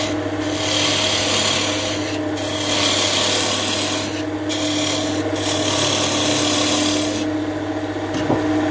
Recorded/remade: recorded